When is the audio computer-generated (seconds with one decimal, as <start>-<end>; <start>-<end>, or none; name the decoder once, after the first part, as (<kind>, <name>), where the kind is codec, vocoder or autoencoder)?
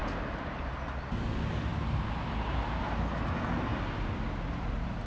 none